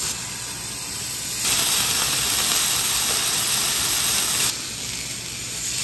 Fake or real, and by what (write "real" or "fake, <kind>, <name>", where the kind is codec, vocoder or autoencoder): real